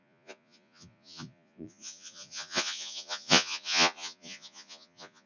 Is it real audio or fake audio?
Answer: fake